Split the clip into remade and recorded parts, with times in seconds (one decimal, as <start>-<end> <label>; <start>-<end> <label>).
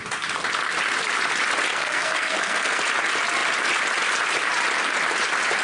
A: 0.0-1.7 recorded; 1.7-2.8 remade; 2.8-5.6 recorded